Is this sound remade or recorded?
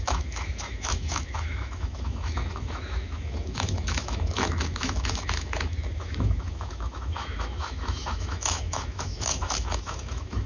remade